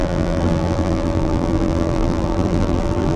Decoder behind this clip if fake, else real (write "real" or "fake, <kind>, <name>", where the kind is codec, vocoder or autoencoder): fake, vocoder, BigVGAN v2